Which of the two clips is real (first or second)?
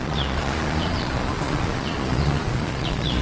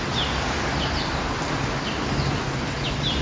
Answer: second